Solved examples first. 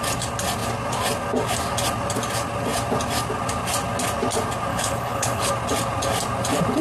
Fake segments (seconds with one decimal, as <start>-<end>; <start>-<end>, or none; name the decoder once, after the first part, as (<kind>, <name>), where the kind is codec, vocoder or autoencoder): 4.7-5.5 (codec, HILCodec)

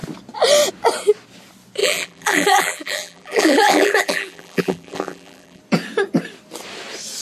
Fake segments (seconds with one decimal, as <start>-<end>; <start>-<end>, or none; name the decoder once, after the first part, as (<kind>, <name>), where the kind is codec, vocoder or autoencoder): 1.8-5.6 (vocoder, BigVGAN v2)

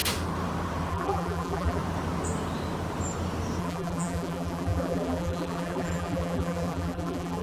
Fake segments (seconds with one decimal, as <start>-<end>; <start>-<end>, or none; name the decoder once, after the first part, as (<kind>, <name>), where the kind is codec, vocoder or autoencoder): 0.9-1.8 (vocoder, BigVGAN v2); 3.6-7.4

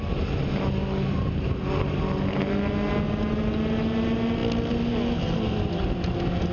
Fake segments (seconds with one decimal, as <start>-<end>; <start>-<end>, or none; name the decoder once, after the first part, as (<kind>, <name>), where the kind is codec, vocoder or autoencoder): none

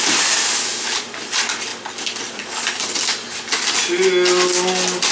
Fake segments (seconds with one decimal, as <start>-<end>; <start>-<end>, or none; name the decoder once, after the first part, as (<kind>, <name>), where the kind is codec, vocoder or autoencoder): none

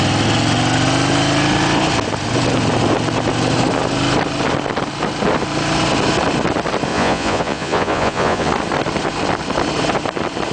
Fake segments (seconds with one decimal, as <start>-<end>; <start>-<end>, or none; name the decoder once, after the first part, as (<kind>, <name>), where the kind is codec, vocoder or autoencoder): 6.9-8.5 (vocoder, Vocos)

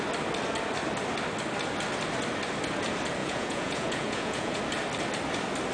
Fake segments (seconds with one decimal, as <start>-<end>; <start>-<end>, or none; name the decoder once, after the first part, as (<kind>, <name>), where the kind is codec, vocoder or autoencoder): 3.2-4.6 (vocoder, Vocos)

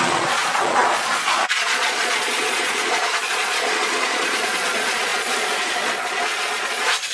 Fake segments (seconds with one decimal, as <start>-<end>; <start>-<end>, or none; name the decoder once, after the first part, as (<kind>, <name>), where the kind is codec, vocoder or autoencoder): 0.0-7.1 (vocoder, Vocos)